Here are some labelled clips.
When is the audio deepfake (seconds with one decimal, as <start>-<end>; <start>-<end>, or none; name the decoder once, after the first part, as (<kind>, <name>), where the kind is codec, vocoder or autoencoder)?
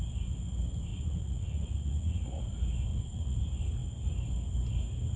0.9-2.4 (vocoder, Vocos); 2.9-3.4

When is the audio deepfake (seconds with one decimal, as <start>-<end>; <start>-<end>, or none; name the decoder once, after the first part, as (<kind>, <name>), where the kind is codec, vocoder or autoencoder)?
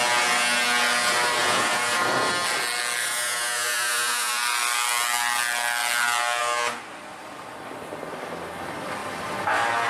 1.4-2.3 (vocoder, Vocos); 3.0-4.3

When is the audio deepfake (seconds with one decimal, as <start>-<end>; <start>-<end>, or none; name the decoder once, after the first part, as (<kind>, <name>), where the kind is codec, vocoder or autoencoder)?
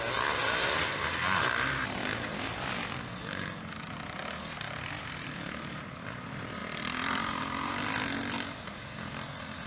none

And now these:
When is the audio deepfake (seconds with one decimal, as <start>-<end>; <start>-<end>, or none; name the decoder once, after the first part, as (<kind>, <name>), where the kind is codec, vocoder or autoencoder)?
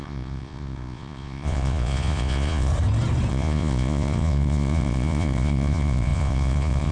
0.0-2.7 (vocoder, Vocos); 3.3-6.9